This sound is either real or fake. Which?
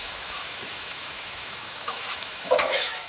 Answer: fake